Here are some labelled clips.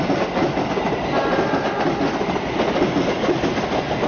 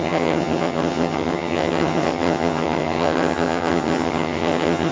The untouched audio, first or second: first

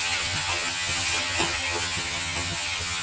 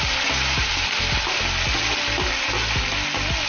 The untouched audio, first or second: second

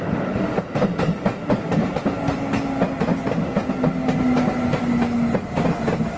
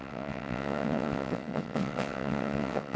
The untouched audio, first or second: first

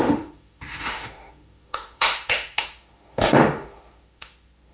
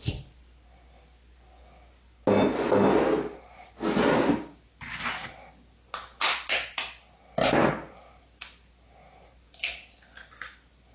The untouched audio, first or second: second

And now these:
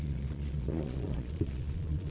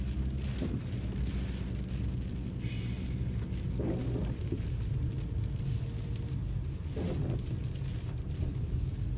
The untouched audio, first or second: second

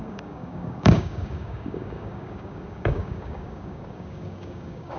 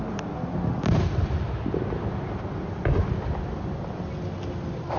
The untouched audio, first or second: second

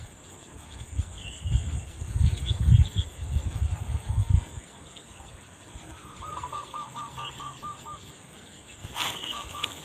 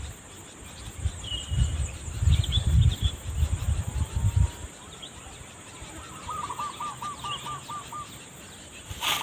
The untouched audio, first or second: second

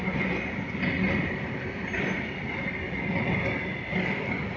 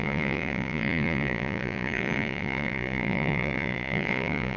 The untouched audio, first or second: first